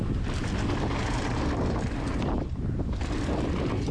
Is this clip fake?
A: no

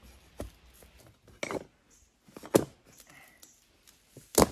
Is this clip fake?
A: no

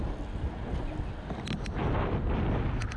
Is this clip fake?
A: no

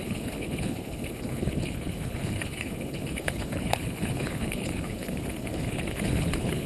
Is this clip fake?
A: yes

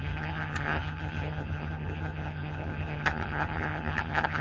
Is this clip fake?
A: yes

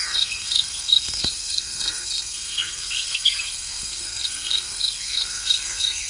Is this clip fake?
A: yes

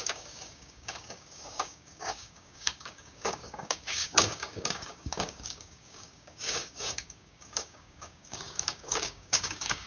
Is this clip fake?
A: yes